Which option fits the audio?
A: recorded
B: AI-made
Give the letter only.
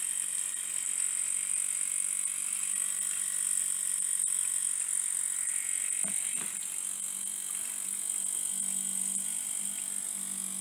A